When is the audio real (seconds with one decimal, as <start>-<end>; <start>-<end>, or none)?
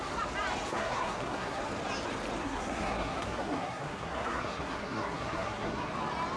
0.0-0.7; 1.6-2.4; 5.9-6.4